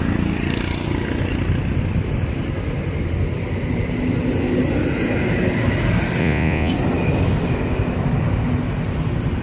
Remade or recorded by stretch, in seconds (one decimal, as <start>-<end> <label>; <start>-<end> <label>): 0.0-6.2 recorded; 6.2-6.7 remade; 6.7-9.4 recorded